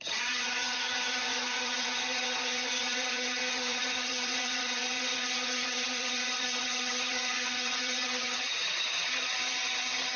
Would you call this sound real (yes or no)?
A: no